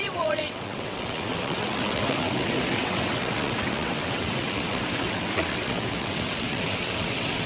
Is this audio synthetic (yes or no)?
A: yes